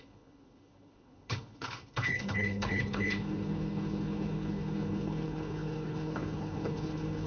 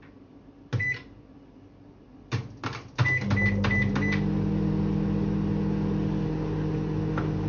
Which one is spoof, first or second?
first